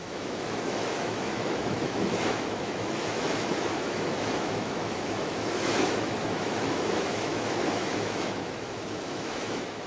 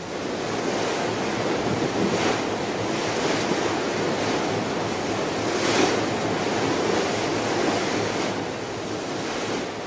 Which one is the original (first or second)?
second